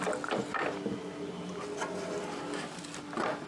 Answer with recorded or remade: recorded